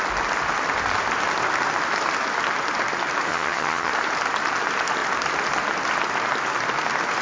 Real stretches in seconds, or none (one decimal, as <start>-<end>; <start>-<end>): 0.0-3.3; 3.9-7.2